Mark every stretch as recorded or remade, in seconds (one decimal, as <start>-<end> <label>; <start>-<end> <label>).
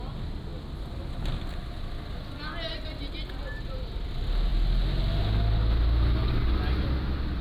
0.0-7.4 recorded